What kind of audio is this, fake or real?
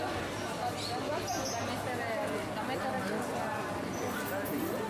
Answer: real